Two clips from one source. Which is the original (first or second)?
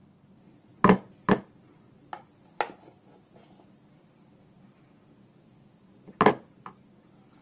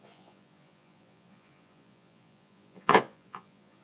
first